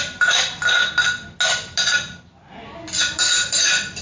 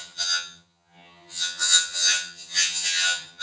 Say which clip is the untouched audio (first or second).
first